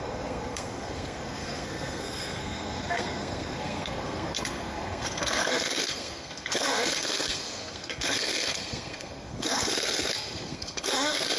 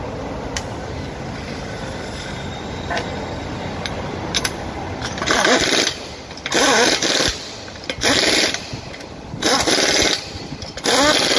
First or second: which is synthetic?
first